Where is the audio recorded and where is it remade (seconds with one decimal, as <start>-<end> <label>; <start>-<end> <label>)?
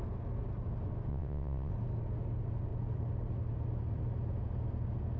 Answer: 0.0-1.1 recorded; 1.1-1.7 remade; 1.7-5.2 recorded